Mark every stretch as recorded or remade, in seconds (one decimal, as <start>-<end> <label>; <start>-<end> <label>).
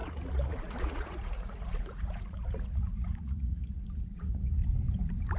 0.0-4.6 remade; 4.6-5.4 recorded